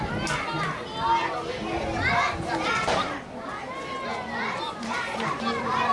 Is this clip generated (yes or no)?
yes